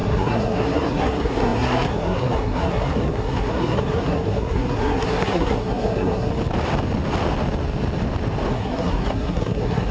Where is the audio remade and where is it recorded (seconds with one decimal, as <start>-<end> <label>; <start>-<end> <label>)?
0.0-6.3 remade; 6.3-8.5 recorded; 8.5-9.9 remade

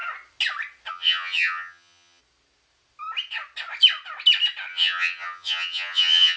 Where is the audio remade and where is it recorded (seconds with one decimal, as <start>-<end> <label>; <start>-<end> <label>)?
0.0-0.9 recorded; 0.9-2.2 remade; 2.2-4.7 recorded; 4.7-6.4 remade

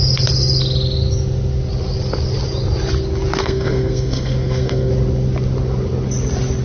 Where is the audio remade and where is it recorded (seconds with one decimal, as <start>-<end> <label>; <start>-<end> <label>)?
0.0-3.4 recorded; 3.4-4.9 remade; 4.9-6.6 recorded